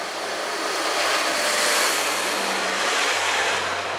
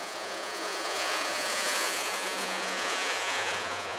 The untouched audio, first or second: first